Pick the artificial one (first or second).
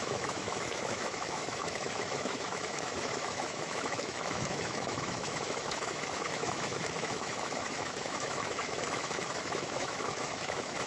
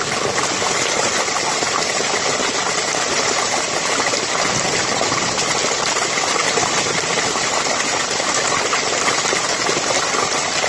first